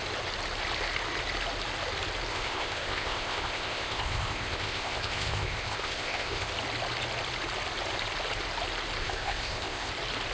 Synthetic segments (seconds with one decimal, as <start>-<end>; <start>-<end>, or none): 2.3-6.5; 9.0-9.9